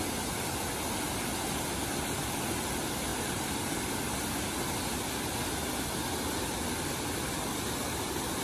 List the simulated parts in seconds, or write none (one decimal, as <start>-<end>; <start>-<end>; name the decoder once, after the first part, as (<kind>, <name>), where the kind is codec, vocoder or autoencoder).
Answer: 3.1-3.7 (vocoder, BigVGAN v2)

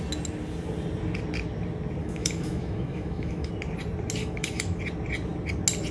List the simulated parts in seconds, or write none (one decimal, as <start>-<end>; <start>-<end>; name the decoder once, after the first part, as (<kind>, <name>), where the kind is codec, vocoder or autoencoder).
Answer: 2.0-3.5 (autoencoder, DAC-VAE); 4.2-4.8

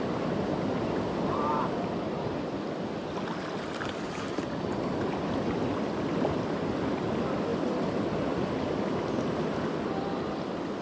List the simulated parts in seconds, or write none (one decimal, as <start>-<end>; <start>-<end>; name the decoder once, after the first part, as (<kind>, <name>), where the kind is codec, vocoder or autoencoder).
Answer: none

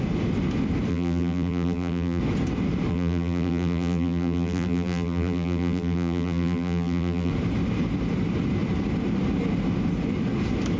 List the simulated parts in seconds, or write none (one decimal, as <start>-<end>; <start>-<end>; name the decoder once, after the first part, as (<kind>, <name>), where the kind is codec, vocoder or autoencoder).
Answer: 0.9-2.2 (vocoder, BigVGAN v2); 2.9-7.3

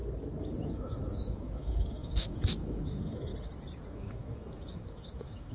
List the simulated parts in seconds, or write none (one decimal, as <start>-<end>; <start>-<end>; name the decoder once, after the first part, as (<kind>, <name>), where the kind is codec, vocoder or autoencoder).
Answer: 0.7-3.3 (autoencoder, DAC-VAE); 3.9-5.5

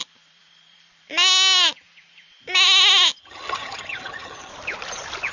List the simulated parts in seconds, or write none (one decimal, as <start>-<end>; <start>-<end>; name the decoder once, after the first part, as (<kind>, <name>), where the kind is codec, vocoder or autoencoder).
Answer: 3.2-4.5 (vocoder, HiFi-GAN)